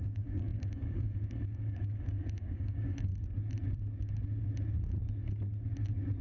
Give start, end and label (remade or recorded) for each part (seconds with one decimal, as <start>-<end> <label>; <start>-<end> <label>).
0.0-3.1 remade; 3.1-6.2 recorded